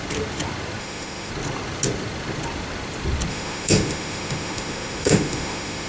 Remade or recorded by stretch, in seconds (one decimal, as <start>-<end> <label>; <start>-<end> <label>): 0.0-0.8 recorded; 0.8-1.3 remade; 1.3-3.3 recorded; 3.3-5.9 remade